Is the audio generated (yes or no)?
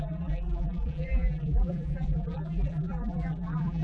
yes